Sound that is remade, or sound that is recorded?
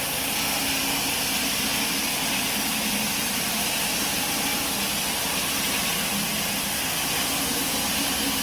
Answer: recorded